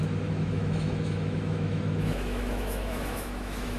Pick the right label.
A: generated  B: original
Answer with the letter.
A